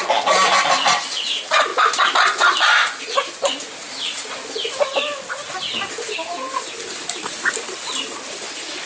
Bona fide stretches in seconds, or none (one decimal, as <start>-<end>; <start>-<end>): 0.0-8.9